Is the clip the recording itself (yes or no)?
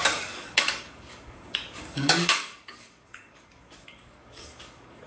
no